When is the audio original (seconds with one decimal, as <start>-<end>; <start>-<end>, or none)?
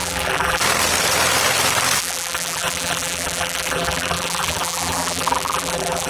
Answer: 0.6-2.0